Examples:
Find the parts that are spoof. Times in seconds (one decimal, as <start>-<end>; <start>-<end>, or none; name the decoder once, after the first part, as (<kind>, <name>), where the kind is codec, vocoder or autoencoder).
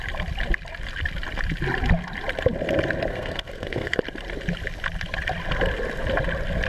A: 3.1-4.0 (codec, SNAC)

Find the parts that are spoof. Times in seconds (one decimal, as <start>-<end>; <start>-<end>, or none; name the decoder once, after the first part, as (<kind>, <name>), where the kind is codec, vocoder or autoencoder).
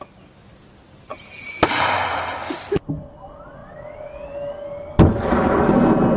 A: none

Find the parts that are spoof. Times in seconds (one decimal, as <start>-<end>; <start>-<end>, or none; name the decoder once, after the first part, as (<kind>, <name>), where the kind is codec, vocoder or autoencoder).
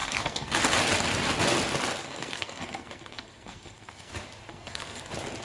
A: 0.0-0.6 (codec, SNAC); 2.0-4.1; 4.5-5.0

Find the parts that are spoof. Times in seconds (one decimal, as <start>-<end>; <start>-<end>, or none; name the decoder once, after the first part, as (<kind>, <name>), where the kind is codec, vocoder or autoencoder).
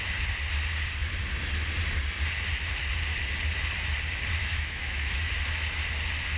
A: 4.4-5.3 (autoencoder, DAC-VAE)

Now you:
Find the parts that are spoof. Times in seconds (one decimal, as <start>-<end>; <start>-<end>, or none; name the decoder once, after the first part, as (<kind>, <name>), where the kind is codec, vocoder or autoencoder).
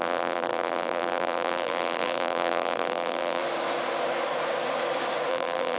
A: 0.0-3.4 (vocoder, BigVGAN v2); 5.3-5.8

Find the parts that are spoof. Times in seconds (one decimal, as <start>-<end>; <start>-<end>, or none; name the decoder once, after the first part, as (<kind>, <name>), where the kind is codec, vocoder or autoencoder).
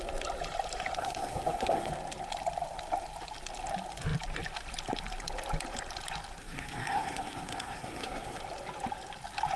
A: 1.0-1.9 (codec, SNAC); 6.4-8.4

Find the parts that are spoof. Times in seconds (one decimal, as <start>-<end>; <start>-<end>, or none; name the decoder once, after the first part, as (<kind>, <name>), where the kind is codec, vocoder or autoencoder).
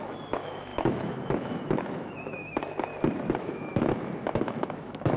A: 0.0-2.9 (autoencoder, DAC-VAE); 3.4-5.2